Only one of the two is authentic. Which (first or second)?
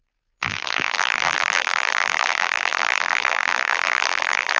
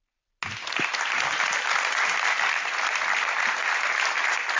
second